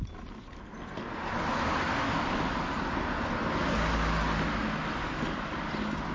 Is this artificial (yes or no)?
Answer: no